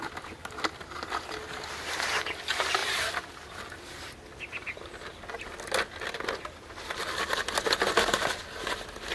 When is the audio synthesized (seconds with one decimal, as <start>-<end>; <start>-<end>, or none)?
none